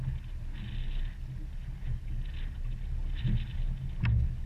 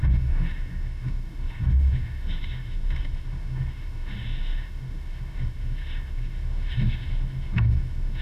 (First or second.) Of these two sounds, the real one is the first